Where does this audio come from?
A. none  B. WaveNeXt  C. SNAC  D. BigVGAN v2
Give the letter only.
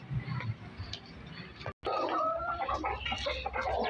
A